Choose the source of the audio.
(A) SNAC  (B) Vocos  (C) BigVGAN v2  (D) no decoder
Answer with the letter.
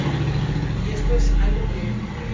D